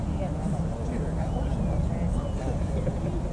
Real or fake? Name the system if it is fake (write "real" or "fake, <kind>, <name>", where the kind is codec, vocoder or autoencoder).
real